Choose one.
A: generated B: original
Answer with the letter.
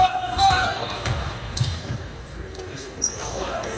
A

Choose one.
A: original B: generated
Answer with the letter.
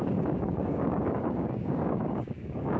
B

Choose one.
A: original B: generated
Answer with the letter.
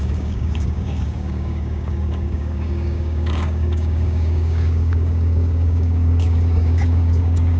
B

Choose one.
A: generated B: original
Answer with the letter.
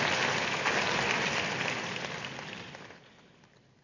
B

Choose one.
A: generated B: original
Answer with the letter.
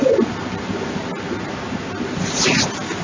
B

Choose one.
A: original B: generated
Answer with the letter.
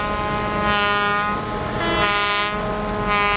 A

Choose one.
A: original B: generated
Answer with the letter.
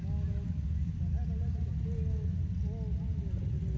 A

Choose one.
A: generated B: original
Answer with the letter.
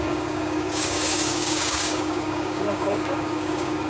A